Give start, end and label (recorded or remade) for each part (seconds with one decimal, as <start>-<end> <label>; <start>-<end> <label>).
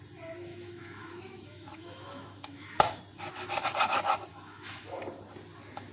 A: 0.0-0.5 recorded; 0.5-3.0 remade; 3.0-4.3 recorded; 4.3-5.0 remade; 5.0-5.9 recorded